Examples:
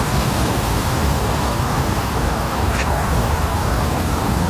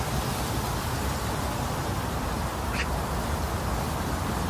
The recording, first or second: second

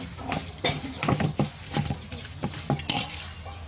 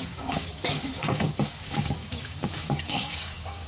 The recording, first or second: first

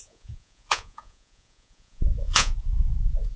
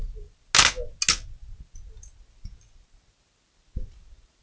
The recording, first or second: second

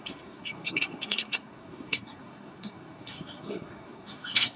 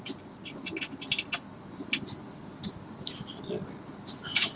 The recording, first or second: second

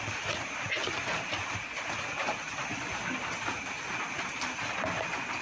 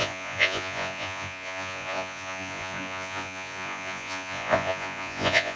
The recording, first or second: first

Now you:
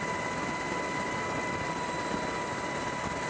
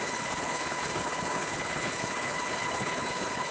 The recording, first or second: first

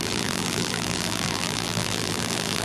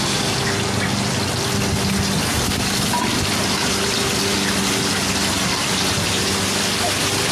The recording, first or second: second